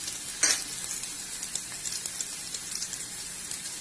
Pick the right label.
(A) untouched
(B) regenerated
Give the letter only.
A